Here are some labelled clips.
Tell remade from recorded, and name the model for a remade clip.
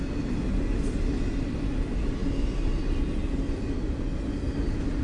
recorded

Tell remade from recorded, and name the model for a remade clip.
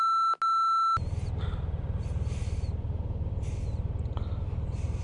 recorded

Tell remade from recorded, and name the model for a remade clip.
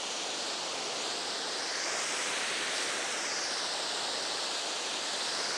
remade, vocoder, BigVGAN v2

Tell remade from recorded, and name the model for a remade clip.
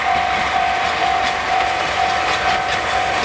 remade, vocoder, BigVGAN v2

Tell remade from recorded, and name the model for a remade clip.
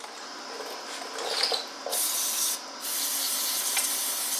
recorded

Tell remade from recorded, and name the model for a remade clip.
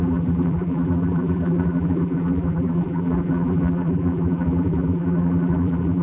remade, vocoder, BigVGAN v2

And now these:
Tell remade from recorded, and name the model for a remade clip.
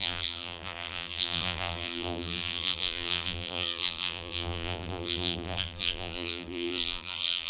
remade, vocoder, BigVGAN v2